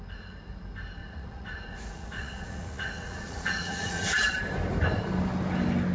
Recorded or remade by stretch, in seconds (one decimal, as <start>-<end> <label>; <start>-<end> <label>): 0.0-1.0 recorded; 1.0-4.4 remade; 4.4-5.9 recorded